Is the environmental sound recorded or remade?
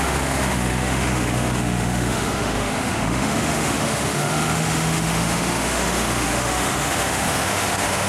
remade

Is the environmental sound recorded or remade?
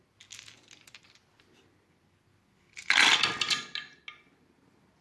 recorded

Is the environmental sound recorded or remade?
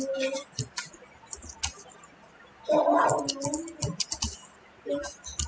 recorded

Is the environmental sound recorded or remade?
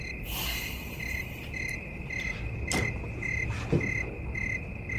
recorded